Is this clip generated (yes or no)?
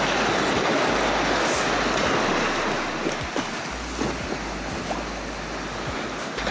no